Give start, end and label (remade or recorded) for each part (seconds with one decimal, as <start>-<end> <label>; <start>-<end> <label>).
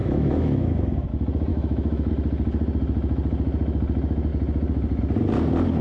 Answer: 0.0-1.1 remade; 1.1-1.5 recorded; 1.5-2.1 remade; 2.1-5.8 recorded